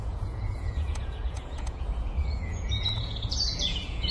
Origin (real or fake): fake